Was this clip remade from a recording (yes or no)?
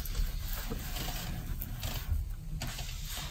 no